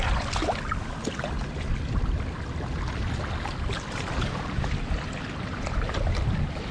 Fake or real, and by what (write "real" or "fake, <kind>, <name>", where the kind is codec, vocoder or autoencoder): real